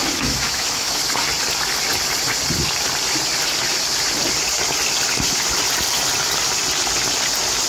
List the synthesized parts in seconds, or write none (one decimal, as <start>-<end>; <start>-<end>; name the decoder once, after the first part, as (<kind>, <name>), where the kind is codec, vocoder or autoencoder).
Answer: 0.0-1.0 (autoencoder, DAC-VAE)

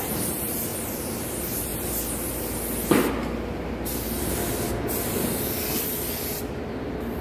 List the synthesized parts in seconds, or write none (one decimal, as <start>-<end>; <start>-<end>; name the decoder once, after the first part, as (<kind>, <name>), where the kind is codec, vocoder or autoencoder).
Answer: 0.0-1.7 (vocoder, BigVGAN v2); 5.1-7.2

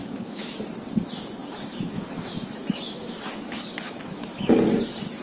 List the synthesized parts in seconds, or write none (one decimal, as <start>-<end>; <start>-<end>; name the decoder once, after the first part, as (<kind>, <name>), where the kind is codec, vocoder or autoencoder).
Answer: 0.0-0.6 (autoencoder, DAC-VAE); 1.4-4.5